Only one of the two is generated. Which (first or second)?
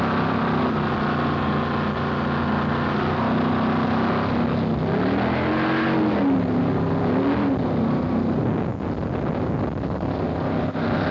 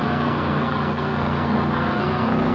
second